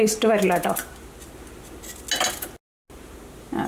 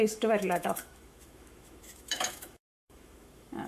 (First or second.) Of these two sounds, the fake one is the second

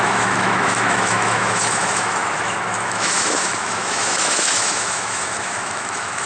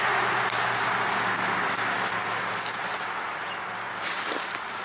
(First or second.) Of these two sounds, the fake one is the first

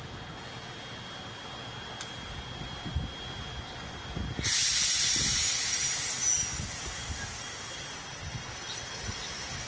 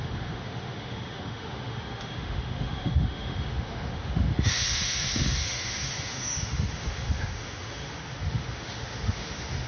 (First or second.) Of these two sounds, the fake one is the second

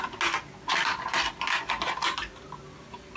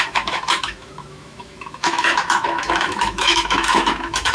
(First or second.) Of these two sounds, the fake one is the second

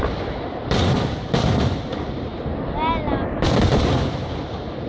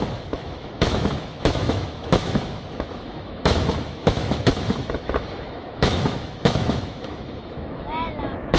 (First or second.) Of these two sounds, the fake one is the second